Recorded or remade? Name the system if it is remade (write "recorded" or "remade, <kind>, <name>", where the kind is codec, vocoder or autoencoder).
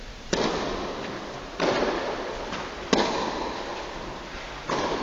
recorded